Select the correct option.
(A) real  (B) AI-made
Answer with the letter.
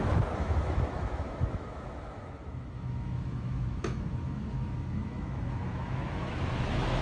B